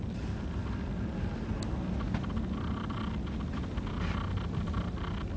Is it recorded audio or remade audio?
recorded